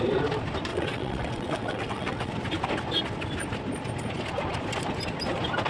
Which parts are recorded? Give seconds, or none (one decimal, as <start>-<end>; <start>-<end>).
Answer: 0.0-0.7; 2.3-5.7